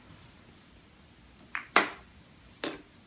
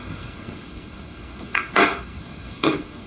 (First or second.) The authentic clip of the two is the first